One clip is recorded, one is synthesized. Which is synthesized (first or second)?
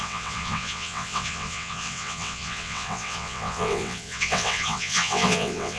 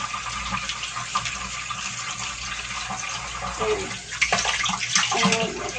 first